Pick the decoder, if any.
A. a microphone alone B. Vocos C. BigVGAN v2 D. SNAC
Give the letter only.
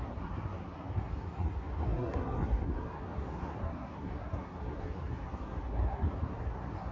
D